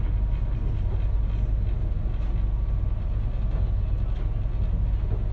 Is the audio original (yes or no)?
yes